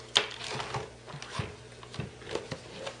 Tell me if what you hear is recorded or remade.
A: recorded